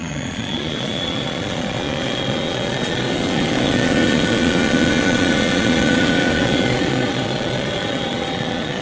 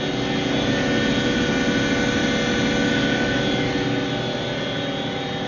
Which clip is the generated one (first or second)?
first